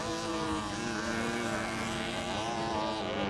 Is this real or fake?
real